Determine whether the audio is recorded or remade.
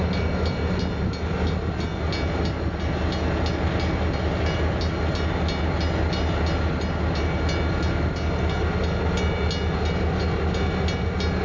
recorded